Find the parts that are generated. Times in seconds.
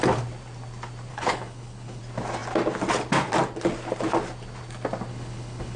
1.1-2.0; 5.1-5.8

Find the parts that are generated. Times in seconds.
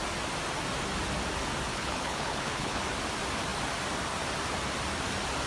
1.7-2.8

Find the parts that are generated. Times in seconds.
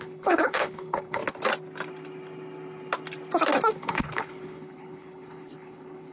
0.0-1.2; 3.7-6.1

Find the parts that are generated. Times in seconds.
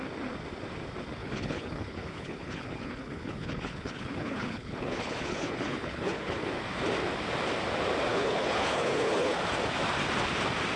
1.2-6.5; 8.1-9.4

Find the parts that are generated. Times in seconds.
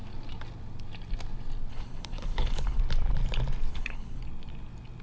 1.7-2.8; 3.7-4.2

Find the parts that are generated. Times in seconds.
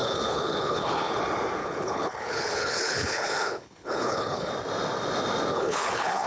0.0-1.2; 1.6-4.5; 5.5-6.3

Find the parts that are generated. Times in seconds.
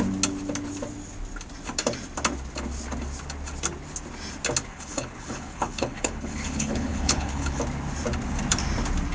4.7-7.6